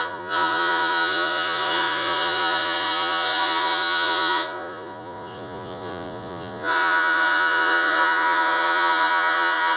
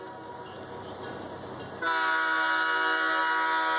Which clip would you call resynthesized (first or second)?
first